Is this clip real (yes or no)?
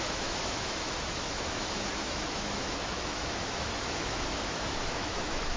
no